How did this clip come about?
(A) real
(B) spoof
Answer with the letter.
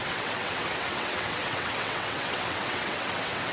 B